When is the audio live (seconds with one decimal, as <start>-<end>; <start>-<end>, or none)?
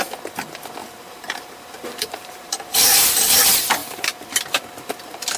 0.0-0.8; 3.3-3.8; 4.3-5.4